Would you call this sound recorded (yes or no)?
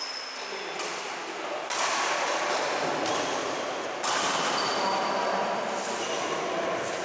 yes